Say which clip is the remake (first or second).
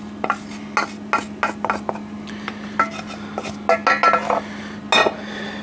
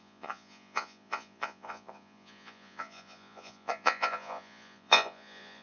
second